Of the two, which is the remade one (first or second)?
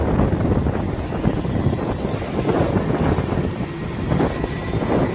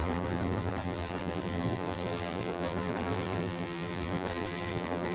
second